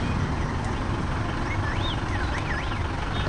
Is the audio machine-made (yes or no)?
no